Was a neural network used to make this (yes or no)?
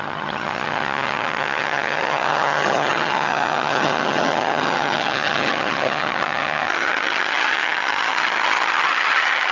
yes